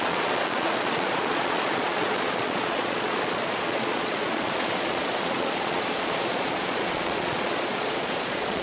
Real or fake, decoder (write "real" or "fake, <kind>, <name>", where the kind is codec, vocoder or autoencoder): fake, vocoder, Vocos